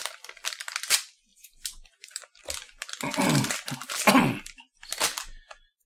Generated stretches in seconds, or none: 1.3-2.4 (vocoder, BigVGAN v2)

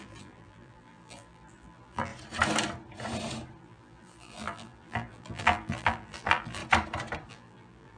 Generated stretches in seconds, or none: 0.0-2.1 (vocoder, BigVGAN v2); 3.6-6.6; 7.3-8.0

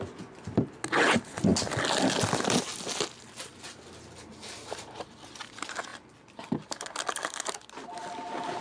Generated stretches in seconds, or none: none

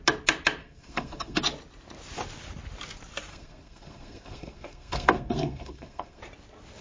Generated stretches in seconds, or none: 0.6-1.4 (codec, SNAC); 3.3-6.2

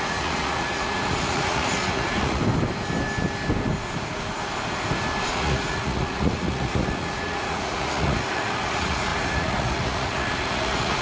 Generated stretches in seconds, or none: 0.0-2.4 (vocoder, Vocos); 5.3-11.0

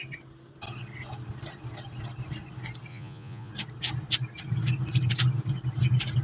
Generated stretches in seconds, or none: 2.9-3.5 (vocoder, Vocos)

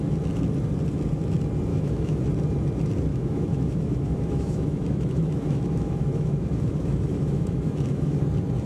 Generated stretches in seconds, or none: 1.7-2.2 (autoencoder, DAC-VAE); 3.1-8.2

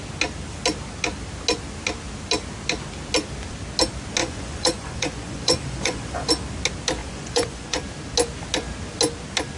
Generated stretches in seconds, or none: 4.2-6.3 (vocoder, Vocos); 7.0-7.8